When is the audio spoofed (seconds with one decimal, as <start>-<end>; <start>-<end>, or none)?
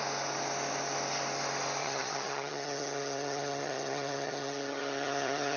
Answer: 1.8-5.6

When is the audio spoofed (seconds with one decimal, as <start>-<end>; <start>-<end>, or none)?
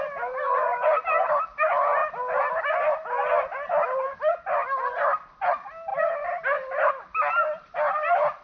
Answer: none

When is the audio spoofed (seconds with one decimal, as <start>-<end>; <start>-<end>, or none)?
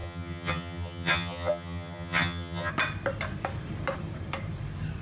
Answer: 0.0-2.7